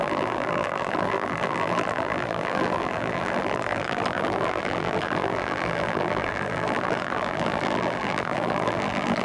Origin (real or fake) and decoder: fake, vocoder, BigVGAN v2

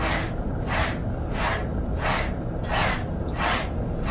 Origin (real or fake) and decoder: real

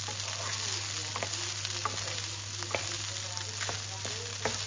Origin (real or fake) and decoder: real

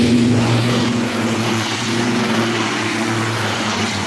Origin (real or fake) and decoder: fake, vocoder, Vocos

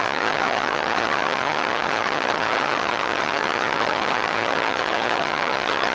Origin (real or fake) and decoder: fake, vocoder, HiFi-GAN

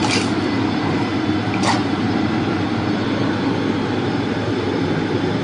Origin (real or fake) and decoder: real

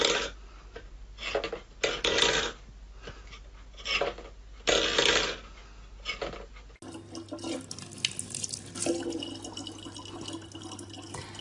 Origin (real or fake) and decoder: real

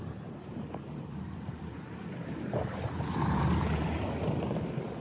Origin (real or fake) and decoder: fake, vocoder, BigVGAN v2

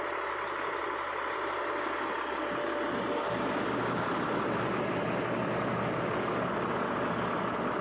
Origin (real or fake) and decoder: real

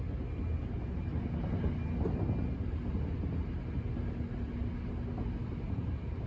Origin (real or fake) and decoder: real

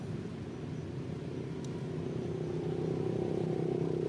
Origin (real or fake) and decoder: real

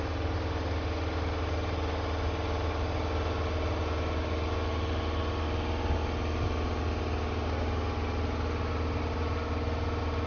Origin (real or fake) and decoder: real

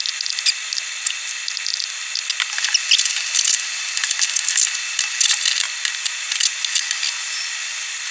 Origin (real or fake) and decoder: real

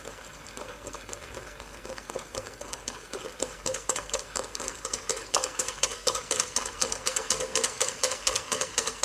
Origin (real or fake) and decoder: fake, codec, SNAC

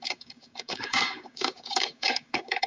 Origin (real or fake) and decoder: fake, codec, DAC